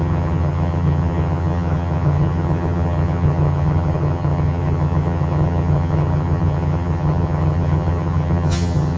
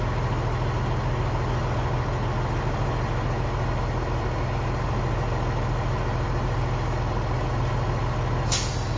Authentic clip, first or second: second